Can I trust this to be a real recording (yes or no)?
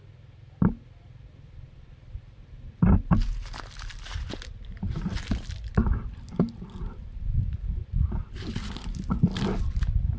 yes